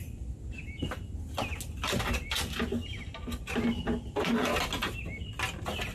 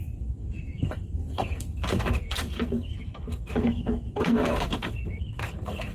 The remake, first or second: second